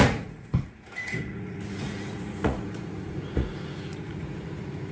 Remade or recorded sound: remade